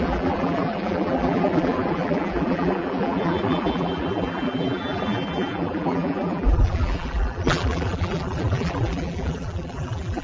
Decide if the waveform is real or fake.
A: fake